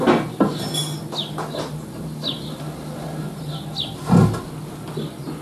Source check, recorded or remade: recorded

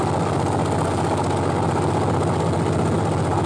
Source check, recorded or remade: recorded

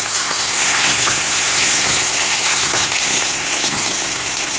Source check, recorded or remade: remade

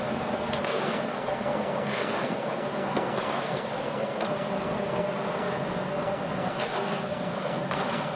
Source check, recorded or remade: remade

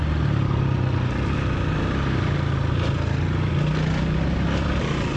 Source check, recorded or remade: recorded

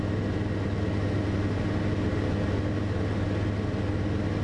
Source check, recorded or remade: recorded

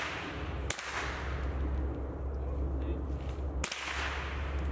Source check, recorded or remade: recorded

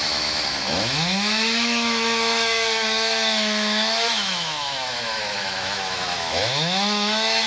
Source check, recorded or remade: remade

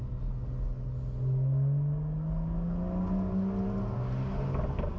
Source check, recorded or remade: recorded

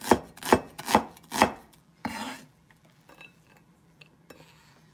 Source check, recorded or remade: remade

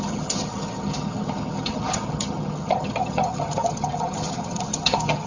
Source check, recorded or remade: remade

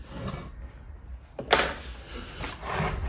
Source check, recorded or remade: recorded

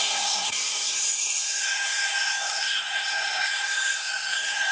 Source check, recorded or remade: remade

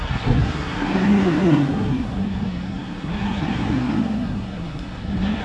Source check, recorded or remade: remade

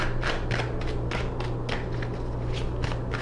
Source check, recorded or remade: recorded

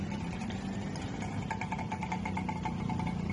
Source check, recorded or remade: recorded